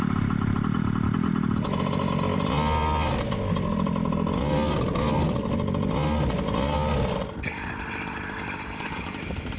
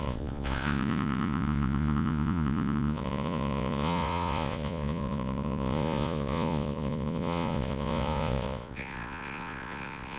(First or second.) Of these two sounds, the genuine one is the first